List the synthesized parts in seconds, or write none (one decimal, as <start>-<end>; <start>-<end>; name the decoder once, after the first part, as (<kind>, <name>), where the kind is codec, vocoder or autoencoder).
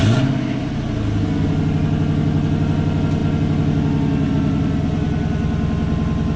none